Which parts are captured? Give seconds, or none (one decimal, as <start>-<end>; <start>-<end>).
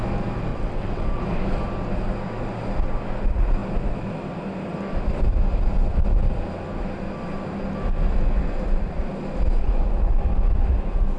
0.0-0.5; 1.2-11.2